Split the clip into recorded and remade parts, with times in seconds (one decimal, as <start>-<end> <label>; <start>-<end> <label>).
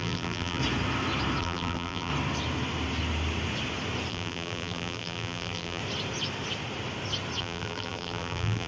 0.0-0.6 remade; 0.6-1.4 recorded; 1.4-2.1 remade; 2.1-4.1 recorded; 4.1-5.8 remade; 5.8-7.4 recorded; 7.4-8.7 remade